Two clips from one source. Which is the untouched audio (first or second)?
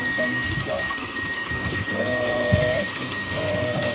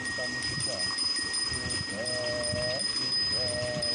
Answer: second